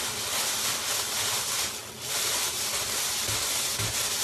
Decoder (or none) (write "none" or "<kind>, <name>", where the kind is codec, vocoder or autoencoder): none